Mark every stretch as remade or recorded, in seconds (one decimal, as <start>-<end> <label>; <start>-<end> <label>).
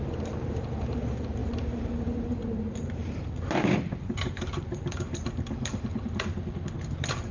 0.0-6.3 remade; 6.3-7.3 recorded